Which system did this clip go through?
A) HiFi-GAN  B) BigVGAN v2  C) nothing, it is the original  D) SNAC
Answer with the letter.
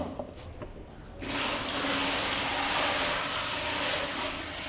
C